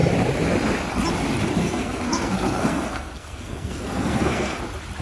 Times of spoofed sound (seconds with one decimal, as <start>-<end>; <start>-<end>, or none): 1.6-4.6